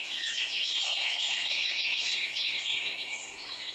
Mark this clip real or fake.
fake